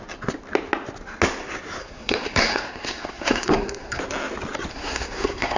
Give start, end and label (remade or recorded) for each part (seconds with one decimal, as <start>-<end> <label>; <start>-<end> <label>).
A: 0.0-1.8 recorded; 1.8-4.0 remade; 4.0-4.7 recorded; 4.7-5.6 remade